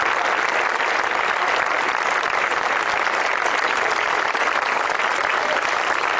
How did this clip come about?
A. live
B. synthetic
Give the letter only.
A